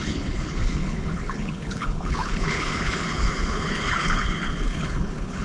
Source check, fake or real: fake